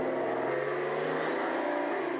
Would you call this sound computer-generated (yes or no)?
no